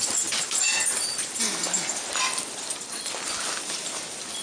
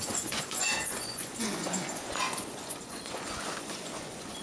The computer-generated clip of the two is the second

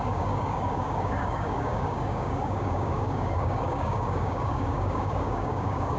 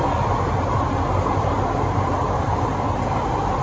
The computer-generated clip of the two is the first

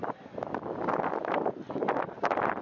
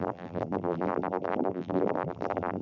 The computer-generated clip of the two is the second